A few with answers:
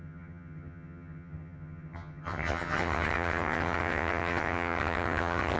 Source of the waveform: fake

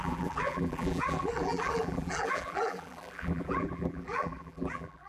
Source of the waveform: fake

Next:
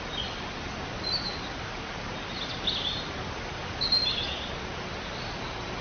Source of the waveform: real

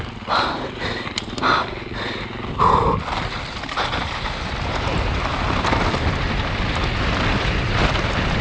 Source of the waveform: real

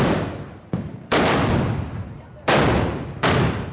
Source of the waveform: real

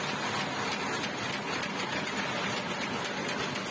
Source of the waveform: real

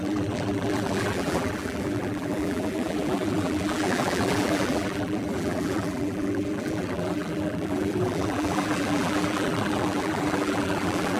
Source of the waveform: fake